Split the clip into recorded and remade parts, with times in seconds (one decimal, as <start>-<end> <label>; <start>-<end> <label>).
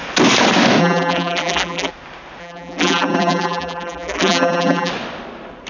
0.0-0.8 recorded; 0.8-1.9 remade; 1.9-2.4 recorded; 2.4-4.9 remade; 4.9-5.7 recorded